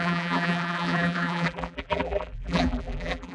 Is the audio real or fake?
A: fake